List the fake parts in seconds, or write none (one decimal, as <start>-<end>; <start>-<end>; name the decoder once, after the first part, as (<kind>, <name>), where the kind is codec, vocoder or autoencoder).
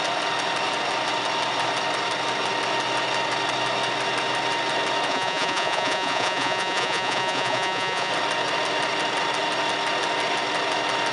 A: 5.1-8.1 (vocoder, Vocos)